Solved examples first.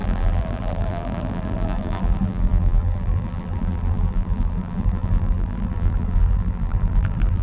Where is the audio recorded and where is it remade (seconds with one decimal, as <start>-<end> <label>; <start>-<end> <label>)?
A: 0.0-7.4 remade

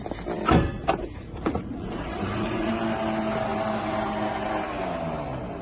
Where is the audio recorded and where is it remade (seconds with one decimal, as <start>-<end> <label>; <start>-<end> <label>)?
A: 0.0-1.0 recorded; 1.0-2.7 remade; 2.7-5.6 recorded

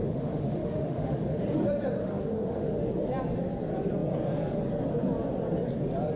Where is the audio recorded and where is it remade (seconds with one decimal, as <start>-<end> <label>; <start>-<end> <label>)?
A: 0.0-1.4 remade; 1.4-2.0 recorded; 2.0-2.8 remade; 2.8-6.2 recorded

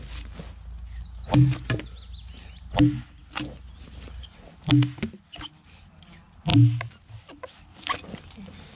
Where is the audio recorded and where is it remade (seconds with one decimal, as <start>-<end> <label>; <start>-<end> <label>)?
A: 0.0-8.8 recorded

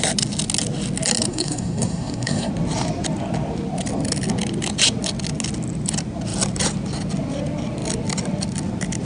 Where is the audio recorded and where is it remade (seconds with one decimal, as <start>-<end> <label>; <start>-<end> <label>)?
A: 0.0-1.3 recorded; 1.3-2.5 remade; 2.5-9.0 recorded